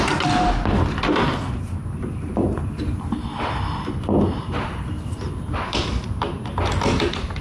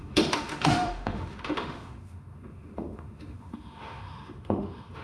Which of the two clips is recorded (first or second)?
first